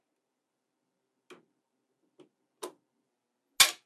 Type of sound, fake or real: real